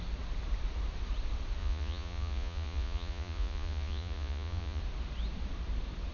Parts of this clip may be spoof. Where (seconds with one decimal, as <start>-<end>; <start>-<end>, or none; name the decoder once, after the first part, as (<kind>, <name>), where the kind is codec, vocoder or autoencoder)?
1.6-4.8 (vocoder, Vocos)